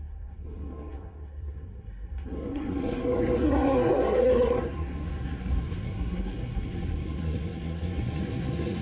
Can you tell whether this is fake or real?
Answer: fake